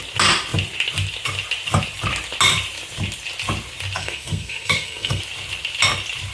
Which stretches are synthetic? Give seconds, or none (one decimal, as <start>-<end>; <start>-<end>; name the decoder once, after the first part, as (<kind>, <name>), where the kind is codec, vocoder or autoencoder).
4.0-5.2 (codec, SNAC)